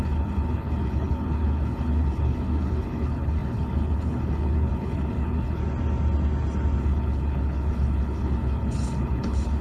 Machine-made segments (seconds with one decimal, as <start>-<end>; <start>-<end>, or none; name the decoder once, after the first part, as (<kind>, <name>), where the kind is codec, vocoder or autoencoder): 0.0-5.6 (codec, HILCodec); 6.8-9.6